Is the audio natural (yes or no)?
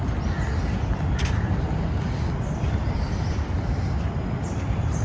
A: yes